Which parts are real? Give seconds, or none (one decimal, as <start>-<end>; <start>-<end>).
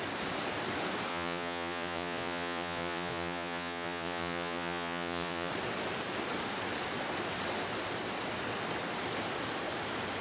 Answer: 0.0-1.1; 5.5-10.2